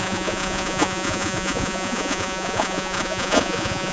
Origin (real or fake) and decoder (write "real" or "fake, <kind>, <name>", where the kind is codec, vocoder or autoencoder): fake, vocoder, Vocos